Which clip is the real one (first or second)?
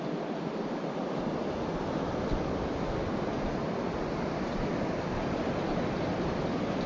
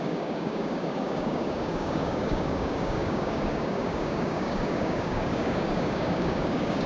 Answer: first